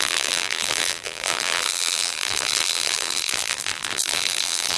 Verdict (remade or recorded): remade